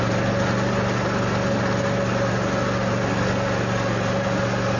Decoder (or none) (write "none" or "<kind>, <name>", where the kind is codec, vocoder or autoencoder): none